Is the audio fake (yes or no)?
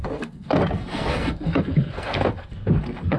yes